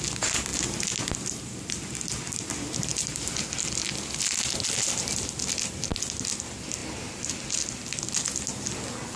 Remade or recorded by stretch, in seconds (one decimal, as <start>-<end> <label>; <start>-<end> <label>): 0.0-9.2 recorded